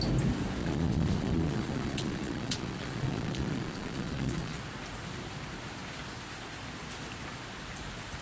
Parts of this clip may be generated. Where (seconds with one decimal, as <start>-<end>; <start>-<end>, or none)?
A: 0.6-4.6